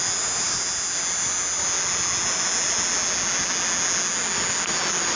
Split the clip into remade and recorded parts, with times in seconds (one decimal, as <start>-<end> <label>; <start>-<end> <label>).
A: 0.0-5.2 recorded